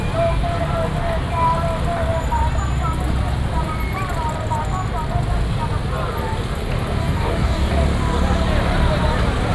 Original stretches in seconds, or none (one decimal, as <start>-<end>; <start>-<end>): 0.0-7.0; 7.7-9.5